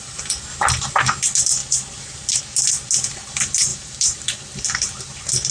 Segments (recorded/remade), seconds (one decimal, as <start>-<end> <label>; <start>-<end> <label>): 0.0-1.6 recorded; 1.6-2.4 remade; 2.4-3.7 recorded; 3.7-4.4 remade; 4.4-5.5 recorded